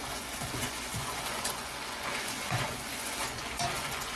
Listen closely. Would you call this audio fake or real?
fake